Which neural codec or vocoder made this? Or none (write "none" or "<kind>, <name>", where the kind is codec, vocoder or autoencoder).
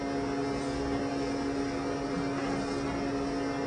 none